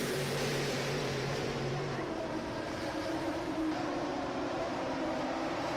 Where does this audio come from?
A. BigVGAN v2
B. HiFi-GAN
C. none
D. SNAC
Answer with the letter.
A